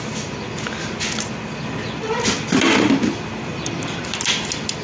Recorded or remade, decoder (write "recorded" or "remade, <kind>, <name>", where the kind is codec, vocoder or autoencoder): recorded